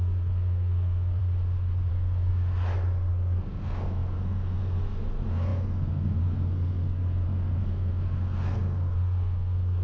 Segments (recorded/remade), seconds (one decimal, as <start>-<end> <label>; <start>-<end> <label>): 0.0-1.2 remade; 1.2-1.9 recorded; 1.9-2.3 remade; 2.3-3.1 recorded; 3.1-9.8 remade